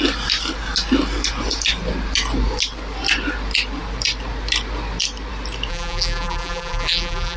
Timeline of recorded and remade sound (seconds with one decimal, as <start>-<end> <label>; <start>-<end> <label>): 0.0-5.7 recorded; 5.7-7.4 remade